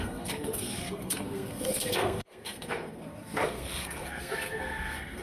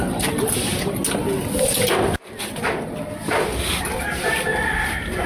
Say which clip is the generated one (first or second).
first